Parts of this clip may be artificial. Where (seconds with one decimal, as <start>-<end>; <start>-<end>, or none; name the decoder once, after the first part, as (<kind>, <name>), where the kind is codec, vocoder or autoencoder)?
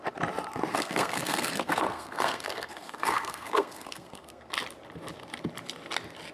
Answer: 0.7-4.5 (codec, SNAC)